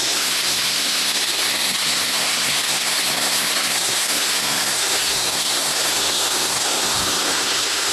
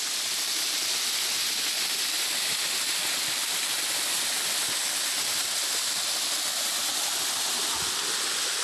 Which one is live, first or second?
second